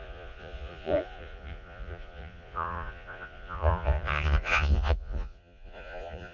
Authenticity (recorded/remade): remade